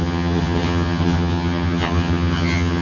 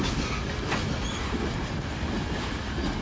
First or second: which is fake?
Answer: first